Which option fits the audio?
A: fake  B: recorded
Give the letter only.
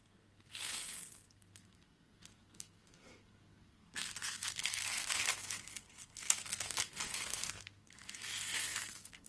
A